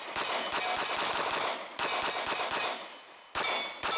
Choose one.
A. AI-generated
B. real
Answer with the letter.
B